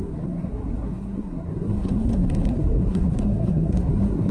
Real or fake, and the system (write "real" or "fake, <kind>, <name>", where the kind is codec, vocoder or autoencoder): fake, codec, SNAC